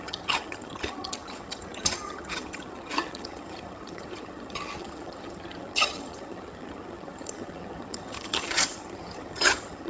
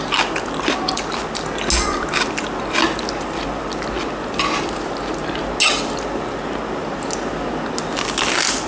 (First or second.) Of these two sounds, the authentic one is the second